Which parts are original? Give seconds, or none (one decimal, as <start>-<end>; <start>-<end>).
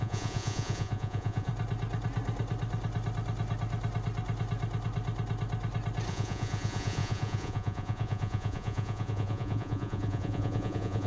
1.5-6.1